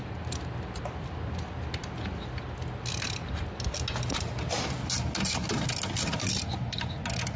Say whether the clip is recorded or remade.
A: recorded